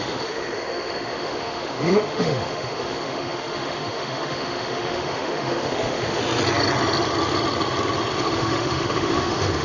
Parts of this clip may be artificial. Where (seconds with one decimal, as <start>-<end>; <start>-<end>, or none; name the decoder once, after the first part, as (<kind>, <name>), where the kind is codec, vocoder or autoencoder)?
0.0-6.2 (autoencoder, DAC-VAE); 8.1-9.6